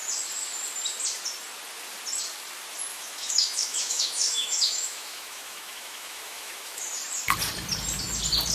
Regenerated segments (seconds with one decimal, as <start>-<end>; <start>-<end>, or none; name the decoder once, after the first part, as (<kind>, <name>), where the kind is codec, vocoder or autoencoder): 2.9-6.9 (autoencoder, DAC-VAE)